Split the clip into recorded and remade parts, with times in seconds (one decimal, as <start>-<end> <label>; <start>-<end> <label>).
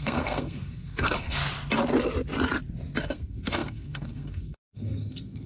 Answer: 0.0-1.4 remade; 1.4-3.0 recorded; 3.0-5.5 remade